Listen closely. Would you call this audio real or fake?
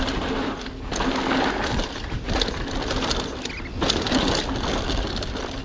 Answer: real